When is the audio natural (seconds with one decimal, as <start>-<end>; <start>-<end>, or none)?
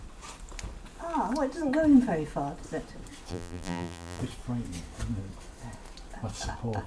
0.0-3.3; 4.2-6.9